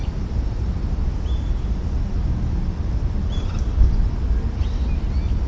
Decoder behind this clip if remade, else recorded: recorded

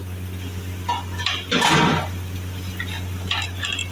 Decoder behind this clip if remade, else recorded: recorded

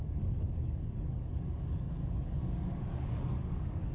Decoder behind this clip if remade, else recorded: remade, codec, DAC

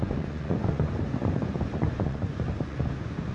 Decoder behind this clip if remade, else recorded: remade, vocoder, Vocos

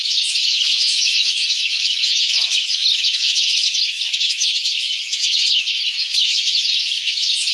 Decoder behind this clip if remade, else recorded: remade, autoencoder, DAC-VAE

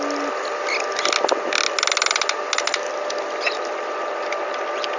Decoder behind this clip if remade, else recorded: recorded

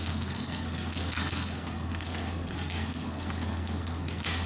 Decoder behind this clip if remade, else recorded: remade, codec, SNAC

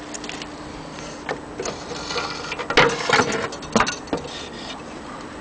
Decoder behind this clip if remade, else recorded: recorded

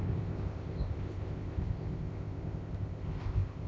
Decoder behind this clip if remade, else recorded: remade, codec, ZipCodec